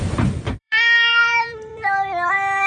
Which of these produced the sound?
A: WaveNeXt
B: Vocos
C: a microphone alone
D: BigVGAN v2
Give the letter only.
D